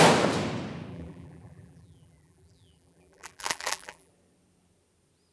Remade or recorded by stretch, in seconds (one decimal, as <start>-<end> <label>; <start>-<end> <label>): 0.0-0.9 recorded; 0.9-4.1 remade; 4.1-5.3 recorded